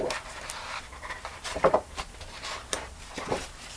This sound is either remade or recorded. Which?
remade